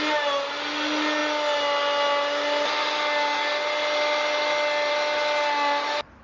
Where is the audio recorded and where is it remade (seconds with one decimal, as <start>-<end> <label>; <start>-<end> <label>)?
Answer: 0.0-6.2 recorded